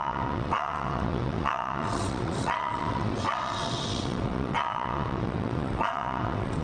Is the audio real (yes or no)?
no